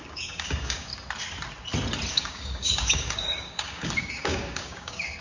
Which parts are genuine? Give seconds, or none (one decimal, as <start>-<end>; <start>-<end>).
0.9-2.1